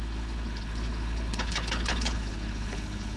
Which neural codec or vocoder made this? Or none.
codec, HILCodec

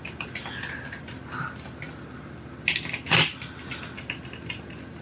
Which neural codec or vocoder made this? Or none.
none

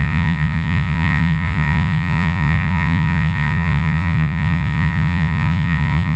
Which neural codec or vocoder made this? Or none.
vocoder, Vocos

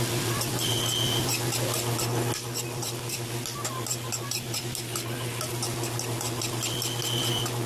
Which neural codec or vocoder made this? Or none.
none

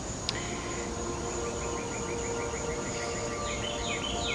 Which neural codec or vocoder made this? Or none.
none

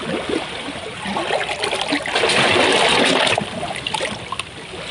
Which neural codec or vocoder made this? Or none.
none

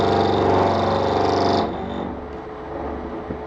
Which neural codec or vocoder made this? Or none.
none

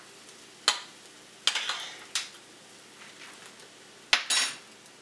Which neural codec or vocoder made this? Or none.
none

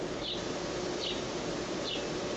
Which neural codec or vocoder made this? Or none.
vocoder, BigVGAN v2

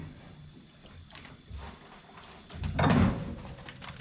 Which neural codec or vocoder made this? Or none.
none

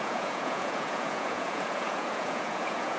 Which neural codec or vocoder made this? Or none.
vocoder, Vocos